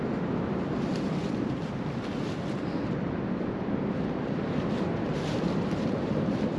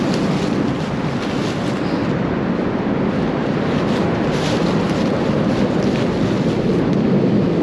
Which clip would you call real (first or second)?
second